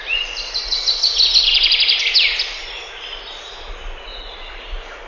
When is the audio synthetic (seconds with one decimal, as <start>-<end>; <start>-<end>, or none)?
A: none